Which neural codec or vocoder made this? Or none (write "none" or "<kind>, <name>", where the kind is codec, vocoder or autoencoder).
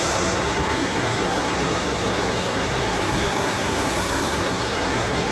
codec, SNAC